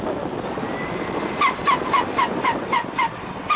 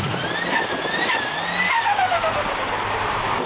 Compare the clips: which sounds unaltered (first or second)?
second